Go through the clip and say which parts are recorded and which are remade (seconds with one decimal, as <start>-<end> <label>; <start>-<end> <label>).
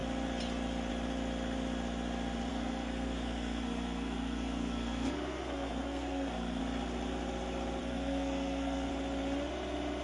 0.0-2.5 recorded; 2.5-6.6 remade; 6.6-7.8 recorded; 7.8-8.9 remade; 8.9-10.0 recorded